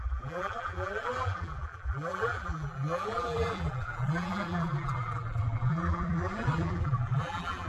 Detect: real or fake fake